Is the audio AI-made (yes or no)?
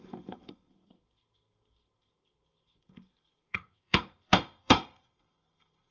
yes